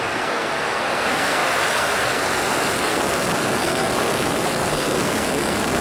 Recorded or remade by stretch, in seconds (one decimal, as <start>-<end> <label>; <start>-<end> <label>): 0.0-5.8 remade